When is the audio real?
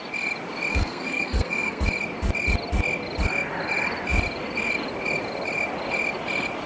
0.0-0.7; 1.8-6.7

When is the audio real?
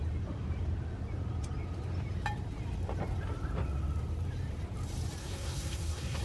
0.0-5.2